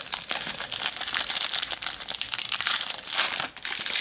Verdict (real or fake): real